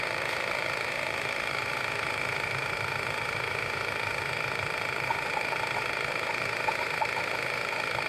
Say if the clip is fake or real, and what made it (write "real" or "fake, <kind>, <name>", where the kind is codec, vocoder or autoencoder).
fake, autoencoder, DAC-VAE